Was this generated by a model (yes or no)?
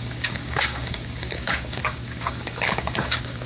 yes